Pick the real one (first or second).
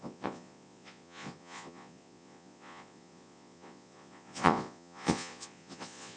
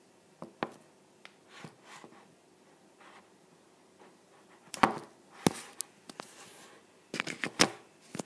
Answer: second